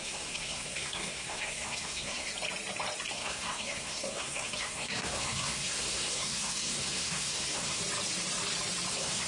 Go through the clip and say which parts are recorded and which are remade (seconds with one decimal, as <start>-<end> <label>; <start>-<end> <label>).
0.0-2.3 remade; 2.3-3.1 recorded; 3.1-7.8 remade; 7.8-8.9 recorded; 8.9-9.3 remade